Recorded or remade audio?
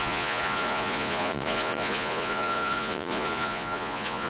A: remade